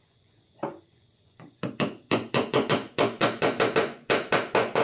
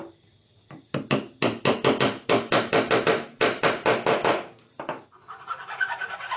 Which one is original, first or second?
second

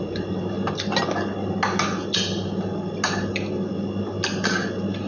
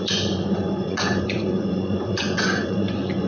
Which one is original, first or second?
first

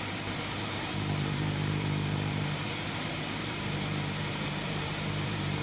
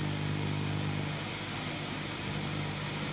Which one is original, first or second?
second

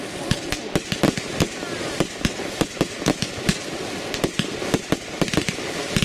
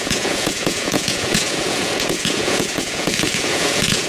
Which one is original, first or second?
first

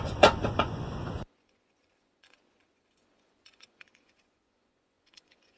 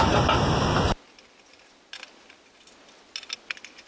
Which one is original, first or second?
second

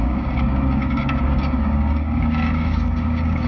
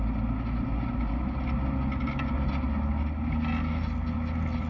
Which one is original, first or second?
second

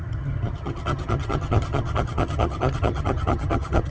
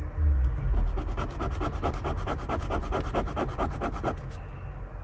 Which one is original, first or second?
second